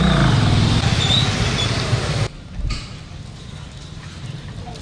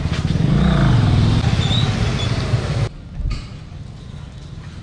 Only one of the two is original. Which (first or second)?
second